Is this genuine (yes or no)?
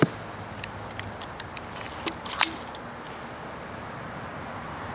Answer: yes